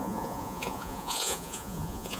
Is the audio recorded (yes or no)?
no